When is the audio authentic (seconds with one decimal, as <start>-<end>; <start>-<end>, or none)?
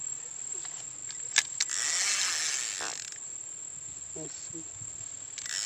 0.0-5.7